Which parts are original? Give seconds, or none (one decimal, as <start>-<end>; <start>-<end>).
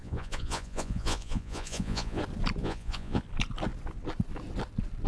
2.2-2.6; 3.2-5.1